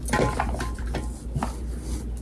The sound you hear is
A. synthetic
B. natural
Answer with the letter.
B